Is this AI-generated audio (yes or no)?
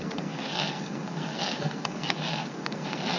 yes